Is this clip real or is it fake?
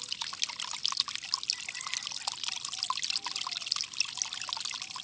real